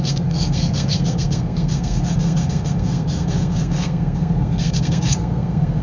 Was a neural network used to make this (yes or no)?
yes